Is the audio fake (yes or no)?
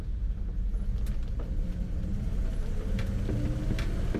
no